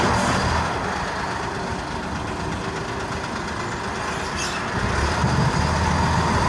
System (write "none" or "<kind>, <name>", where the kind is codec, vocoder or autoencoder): none